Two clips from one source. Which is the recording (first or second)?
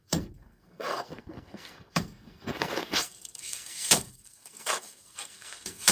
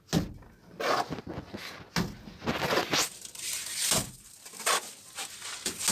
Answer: second